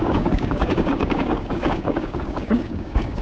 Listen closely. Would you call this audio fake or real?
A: fake